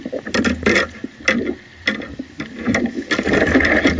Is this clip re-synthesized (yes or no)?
no